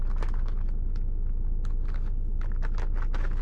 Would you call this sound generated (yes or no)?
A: no